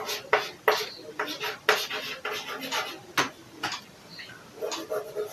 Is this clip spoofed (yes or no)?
no